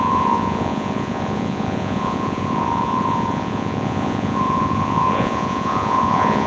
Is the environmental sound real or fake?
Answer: fake